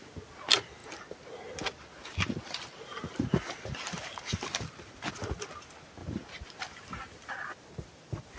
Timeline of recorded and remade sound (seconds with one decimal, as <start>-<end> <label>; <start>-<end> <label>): 0.0-8.4 recorded